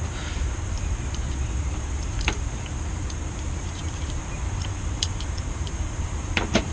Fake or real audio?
fake